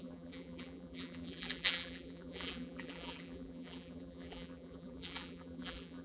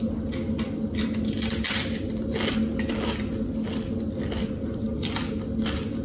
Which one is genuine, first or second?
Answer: second